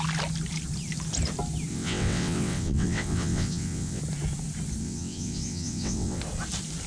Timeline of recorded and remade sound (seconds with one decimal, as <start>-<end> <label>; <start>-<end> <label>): 0.0-1.7 recorded; 1.7-4.0 remade; 4.0-4.8 recorded; 4.8-6.2 remade; 6.2-6.9 recorded